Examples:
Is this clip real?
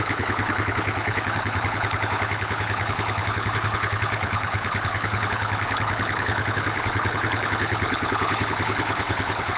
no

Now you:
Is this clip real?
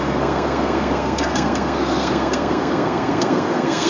no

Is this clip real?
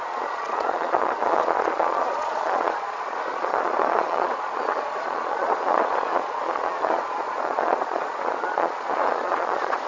no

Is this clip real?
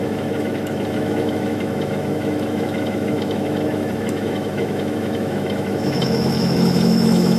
no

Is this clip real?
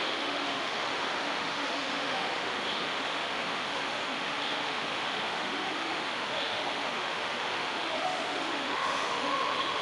no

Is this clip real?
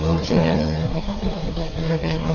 no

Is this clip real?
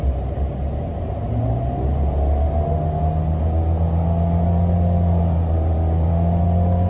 yes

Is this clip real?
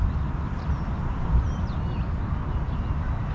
yes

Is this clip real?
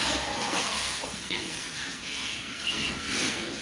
no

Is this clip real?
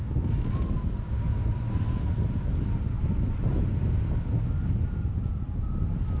yes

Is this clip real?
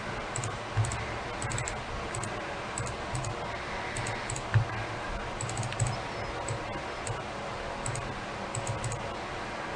yes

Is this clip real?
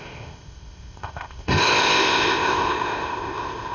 no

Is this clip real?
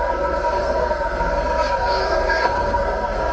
no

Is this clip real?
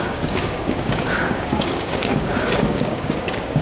no